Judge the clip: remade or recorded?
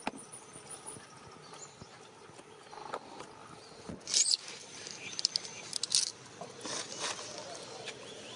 recorded